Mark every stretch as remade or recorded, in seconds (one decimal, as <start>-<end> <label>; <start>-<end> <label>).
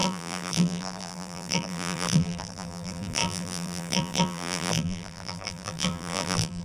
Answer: 0.0-6.6 remade